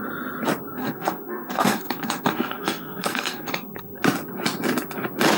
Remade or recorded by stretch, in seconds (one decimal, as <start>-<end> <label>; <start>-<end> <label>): 0.0-0.8 recorded; 0.8-4.0 remade; 4.0-5.4 recorded